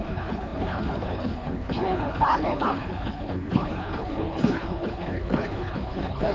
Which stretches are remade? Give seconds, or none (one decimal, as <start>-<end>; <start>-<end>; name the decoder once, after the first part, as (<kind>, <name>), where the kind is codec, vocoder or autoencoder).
0.0-6.3 (codec, HILCodec)